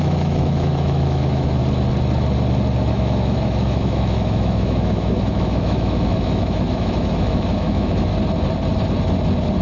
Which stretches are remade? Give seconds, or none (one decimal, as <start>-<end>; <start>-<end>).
0.0-1.6; 2.9-8.1